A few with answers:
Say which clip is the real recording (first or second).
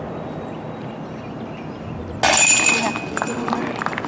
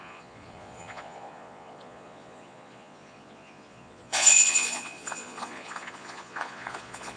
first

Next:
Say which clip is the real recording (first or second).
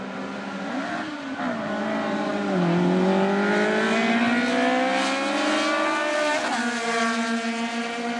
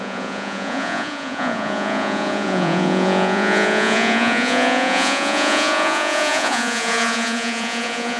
first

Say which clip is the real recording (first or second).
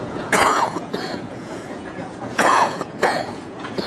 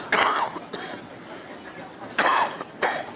second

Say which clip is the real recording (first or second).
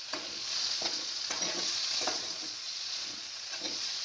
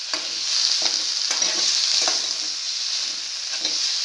second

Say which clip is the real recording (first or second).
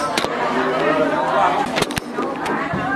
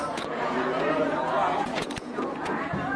first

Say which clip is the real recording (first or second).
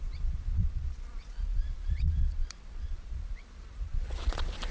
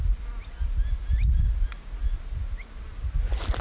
second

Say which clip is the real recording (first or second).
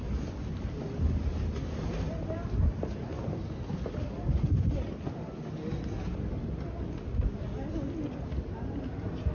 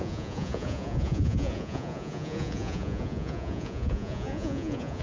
first